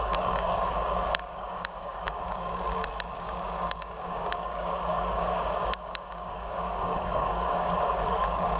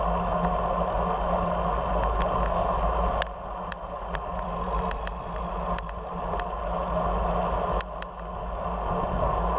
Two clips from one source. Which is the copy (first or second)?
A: first